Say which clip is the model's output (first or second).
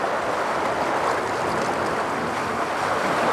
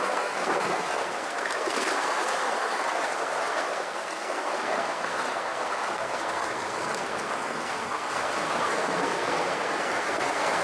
second